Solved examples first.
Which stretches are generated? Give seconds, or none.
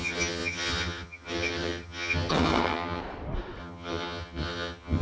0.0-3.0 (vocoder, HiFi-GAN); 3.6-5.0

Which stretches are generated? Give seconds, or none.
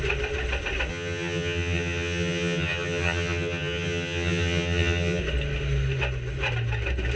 0.9-5.2 (vocoder, HiFi-GAN)